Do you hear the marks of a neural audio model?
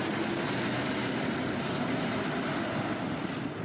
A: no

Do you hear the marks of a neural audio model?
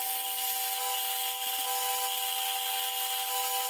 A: no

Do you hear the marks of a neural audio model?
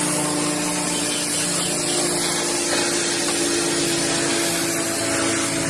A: no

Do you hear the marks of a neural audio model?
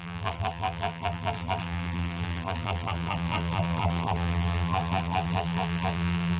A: yes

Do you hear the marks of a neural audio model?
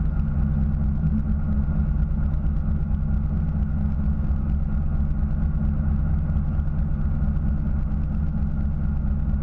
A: no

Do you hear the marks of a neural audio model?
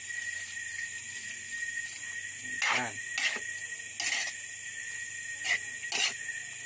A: no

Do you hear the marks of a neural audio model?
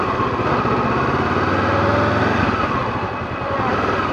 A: no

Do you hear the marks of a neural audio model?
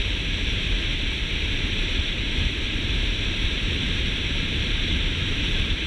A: yes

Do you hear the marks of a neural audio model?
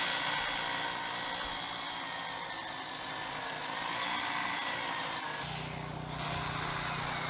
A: no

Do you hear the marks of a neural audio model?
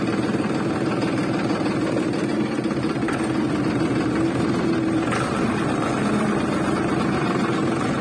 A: yes